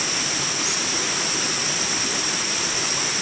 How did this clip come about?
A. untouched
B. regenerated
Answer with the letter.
A